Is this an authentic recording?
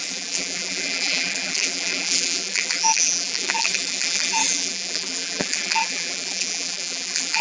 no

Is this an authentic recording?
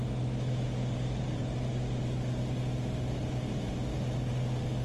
yes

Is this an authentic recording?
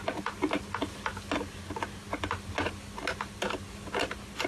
yes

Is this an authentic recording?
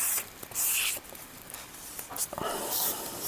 no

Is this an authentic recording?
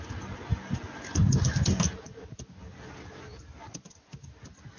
yes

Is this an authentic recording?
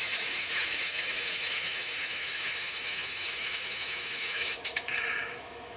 no